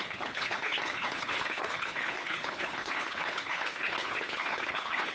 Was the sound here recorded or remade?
remade